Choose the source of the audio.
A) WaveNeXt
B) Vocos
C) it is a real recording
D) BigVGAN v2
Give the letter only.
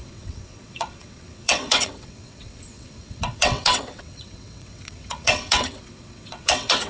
A